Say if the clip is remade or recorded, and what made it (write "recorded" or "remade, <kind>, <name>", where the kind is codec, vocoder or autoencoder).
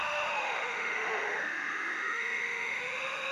remade, autoencoder, DAC-VAE